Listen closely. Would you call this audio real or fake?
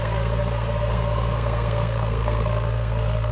fake